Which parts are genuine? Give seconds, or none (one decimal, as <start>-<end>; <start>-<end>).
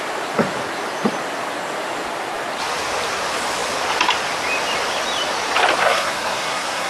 0.0-5.8